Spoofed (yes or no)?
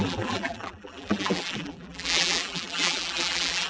yes